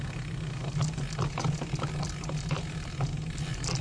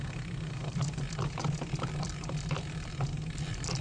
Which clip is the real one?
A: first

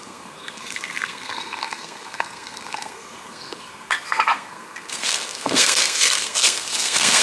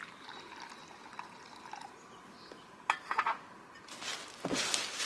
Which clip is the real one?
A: second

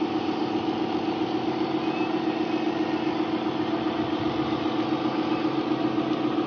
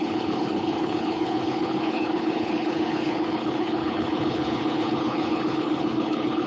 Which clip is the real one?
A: first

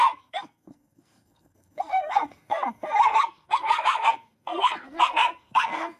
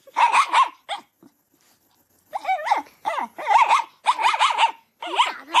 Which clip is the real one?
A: second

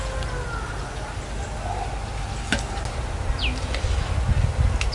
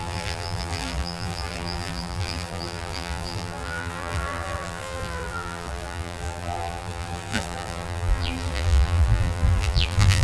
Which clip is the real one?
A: first